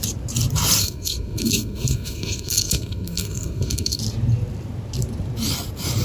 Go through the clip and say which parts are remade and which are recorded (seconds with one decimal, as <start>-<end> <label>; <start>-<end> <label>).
0.0-0.8 recorded; 0.8-4.0 remade; 4.0-6.0 recorded